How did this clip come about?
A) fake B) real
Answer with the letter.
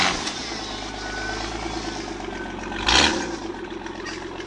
B